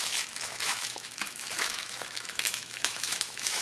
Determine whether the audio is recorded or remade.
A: remade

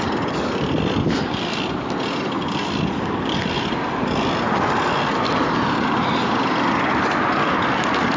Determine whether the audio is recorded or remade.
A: recorded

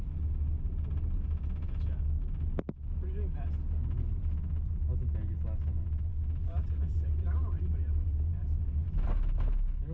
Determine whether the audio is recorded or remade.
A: recorded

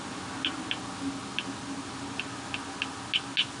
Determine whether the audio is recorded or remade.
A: recorded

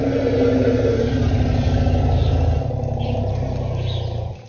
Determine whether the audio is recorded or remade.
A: recorded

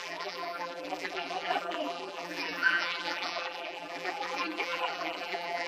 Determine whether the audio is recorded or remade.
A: remade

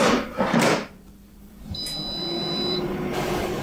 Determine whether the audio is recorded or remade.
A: remade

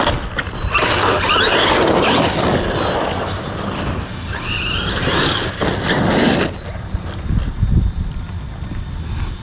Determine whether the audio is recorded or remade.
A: recorded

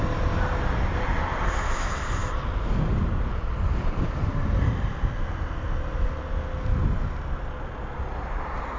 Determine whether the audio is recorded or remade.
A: recorded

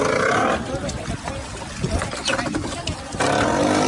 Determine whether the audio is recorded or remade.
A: recorded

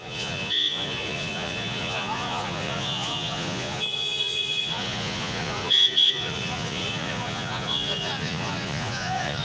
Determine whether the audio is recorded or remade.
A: remade